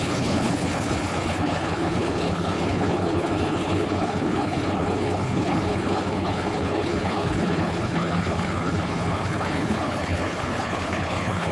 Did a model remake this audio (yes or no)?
yes